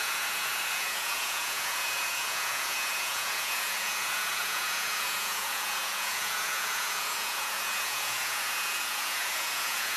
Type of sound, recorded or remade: remade